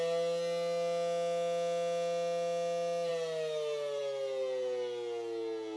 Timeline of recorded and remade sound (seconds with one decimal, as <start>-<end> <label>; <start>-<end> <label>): 0.0-5.8 recorded